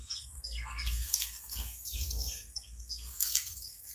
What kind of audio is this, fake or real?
fake